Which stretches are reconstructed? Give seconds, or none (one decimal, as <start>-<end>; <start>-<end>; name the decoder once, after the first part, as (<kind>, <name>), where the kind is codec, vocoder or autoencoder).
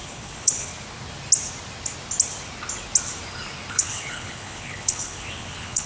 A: 0.0-0.7 (codec, HILCodec); 3.7-5.9